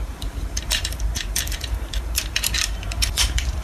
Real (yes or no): no